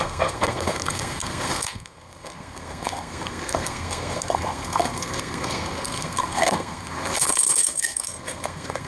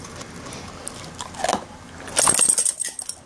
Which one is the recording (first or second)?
second